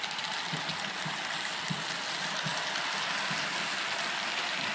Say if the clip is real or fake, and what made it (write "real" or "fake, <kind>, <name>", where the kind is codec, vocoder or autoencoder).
real